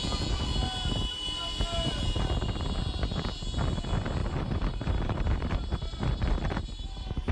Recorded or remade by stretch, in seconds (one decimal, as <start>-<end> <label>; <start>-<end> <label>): 0.0-4.2 recorded; 4.2-5.8 remade; 5.8-7.3 recorded